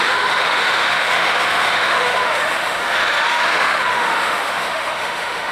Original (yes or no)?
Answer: no